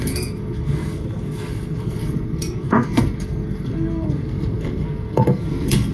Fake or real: fake